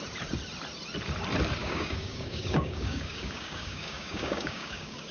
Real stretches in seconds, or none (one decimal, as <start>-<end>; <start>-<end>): 0.0-1.6